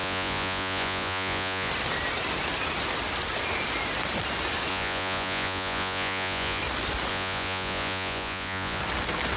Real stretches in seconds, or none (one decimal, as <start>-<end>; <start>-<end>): 1.7-4.7; 6.6-7.1; 8.8-9.4

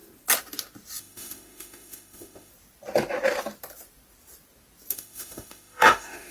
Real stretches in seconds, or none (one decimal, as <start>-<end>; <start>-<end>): 0.0-1.0; 2.5-4.9

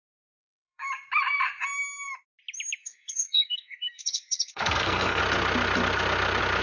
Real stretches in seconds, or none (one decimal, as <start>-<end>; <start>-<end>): 0.0-0.4; 0.9-2.8; 5.2-6.6

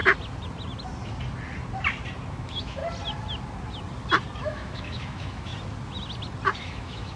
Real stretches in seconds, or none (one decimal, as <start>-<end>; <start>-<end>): 0.0-2.3; 2.8-4.4; 5.5-6.6

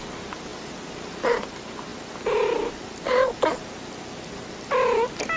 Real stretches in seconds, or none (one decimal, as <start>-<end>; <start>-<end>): 0.0-5.4